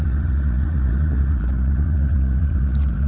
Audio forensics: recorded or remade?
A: remade